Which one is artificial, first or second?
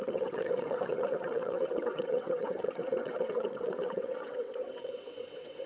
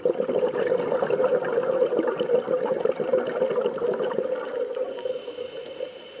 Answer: first